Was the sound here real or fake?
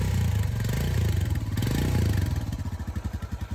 real